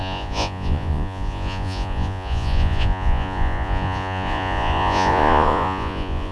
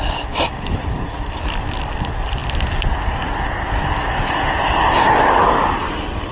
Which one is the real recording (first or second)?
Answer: second